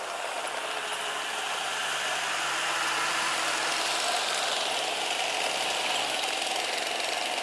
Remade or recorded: recorded